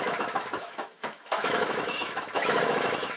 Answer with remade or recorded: remade